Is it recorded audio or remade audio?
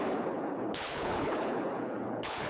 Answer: remade